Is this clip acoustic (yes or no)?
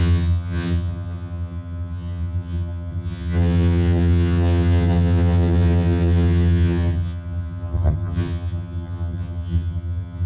no